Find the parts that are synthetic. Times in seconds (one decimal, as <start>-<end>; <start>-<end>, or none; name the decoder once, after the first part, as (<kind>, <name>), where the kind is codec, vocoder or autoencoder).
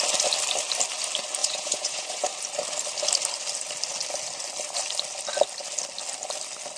1.4-2.3 (vocoder, Vocos)